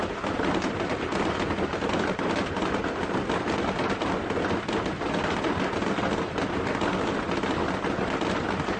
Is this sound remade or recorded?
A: recorded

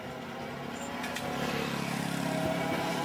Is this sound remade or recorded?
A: recorded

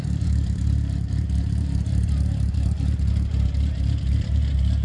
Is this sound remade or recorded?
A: remade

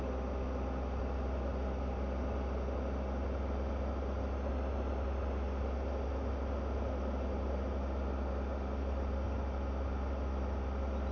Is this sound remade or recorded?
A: recorded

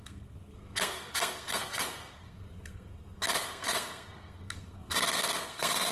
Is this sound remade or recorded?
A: remade